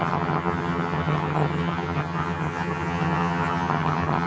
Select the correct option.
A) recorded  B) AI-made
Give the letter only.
B